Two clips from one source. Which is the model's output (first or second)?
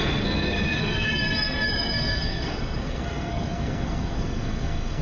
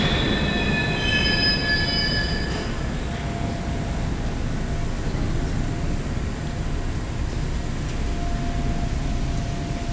first